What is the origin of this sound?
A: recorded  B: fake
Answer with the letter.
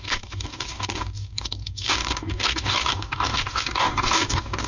B